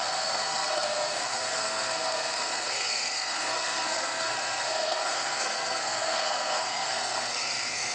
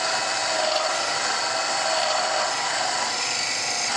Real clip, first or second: second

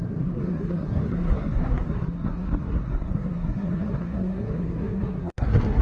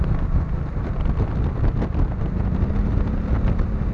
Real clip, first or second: second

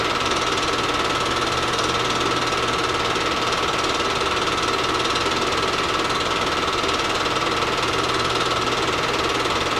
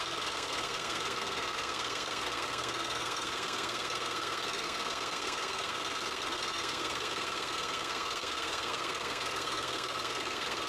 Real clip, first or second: first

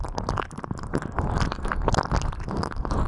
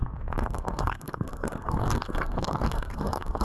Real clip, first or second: first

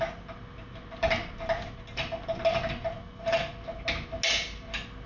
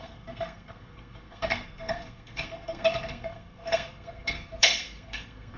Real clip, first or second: first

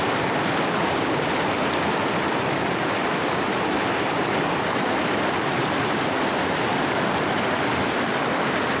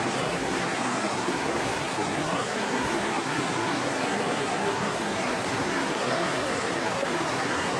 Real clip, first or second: first